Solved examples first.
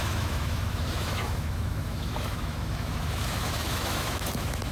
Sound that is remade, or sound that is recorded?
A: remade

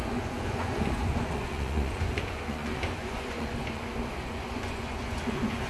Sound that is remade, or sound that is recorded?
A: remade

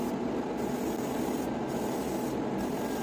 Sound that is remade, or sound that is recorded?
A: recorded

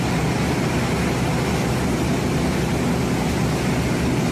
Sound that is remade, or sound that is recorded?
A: recorded